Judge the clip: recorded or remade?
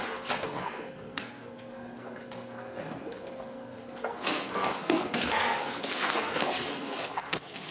remade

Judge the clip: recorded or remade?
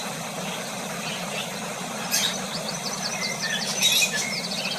recorded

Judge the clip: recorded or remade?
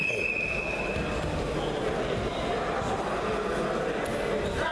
recorded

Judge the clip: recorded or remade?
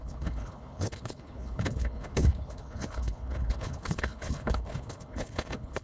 remade